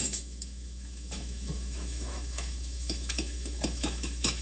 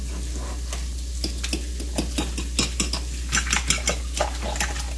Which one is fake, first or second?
first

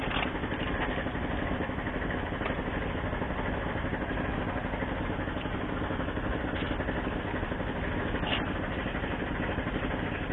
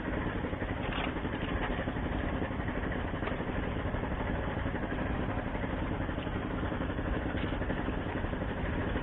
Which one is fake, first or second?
second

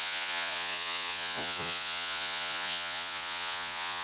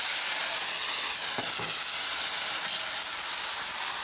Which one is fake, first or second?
first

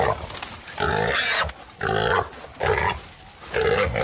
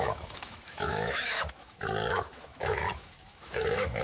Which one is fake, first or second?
second